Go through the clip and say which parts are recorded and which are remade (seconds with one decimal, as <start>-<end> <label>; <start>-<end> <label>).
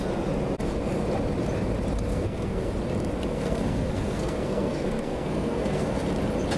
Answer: 0.0-2.1 recorded; 2.1-2.7 remade; 2.7-3.3 recorded; 3.3-6.0 remade; 6.0-6.6 recorded